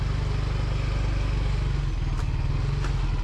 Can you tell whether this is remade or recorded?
recorded